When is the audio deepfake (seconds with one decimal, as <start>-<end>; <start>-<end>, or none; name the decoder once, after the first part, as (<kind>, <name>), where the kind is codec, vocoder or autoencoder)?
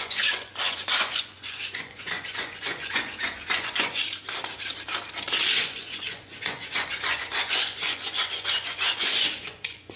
0.0-4.0 (vocoder, Vocos); 5.6-10.0